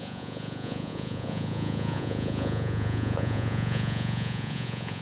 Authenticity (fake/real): fake